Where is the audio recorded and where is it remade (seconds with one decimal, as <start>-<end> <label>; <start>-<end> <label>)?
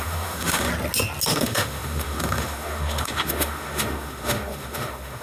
0.0-0.7 remade; 0.7-1.3 recorded; 1.3-5.2 remade